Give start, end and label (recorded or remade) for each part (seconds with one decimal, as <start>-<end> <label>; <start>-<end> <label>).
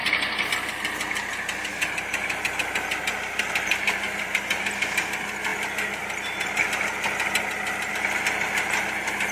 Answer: 0.0-1.7 recorded; 1.7-2.4 remade; 2.4-9.3 recorded